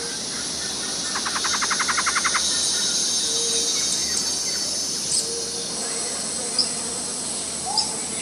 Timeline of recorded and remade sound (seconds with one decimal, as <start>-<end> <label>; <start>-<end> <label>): 0.0-8.2 recorded